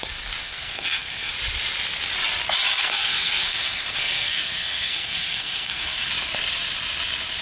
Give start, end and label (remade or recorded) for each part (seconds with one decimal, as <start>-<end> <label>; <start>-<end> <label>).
0.0-0.4 recorded; 0.4-1.3 remade; 1.3-2.8 recorded; 2.8-6.1 remade; 6.1-7.4 recorded